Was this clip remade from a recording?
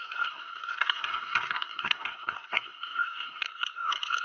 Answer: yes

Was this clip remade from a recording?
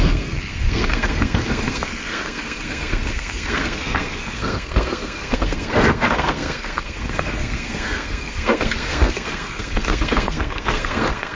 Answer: yes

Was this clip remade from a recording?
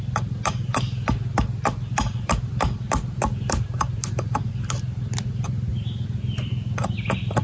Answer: no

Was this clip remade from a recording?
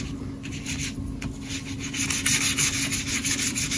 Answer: no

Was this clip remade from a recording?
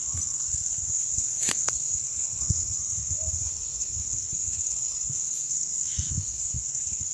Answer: yes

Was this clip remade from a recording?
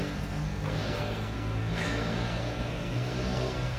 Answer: yes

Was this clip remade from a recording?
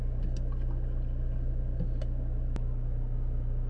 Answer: no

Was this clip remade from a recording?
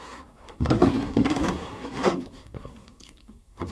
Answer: yes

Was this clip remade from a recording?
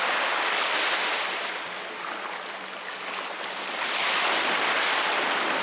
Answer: no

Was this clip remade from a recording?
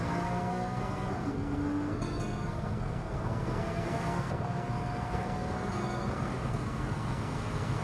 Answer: yes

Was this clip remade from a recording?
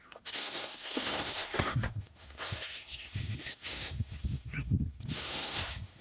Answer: yes